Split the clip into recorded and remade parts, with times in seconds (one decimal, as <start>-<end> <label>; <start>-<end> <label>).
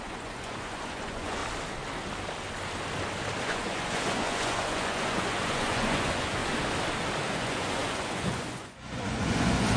0.0-1.4 remade; 1.4-3.4 recorded; 3.4-6.4 remade; 6.4-7.3 recorded; 7.3-9.8 remade